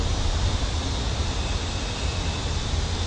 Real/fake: real